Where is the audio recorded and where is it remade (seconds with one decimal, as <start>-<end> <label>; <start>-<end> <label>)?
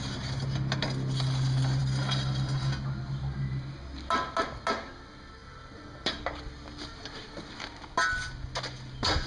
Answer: 0.0-9.3 recorded